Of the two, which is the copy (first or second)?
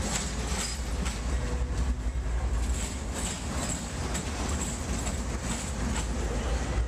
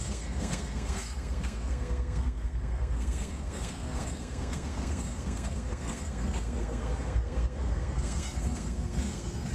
second